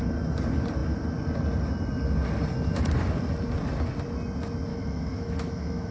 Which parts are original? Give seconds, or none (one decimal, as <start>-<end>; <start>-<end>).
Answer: 0.0-4.7